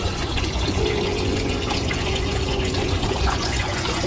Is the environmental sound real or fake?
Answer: fake